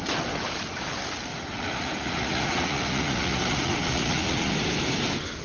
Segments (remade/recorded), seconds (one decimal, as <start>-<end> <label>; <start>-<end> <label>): 0.0-1.3 recorded; 1.3-4.5 remade; 4.5-5.4 recorded